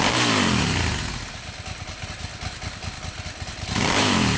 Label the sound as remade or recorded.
recorded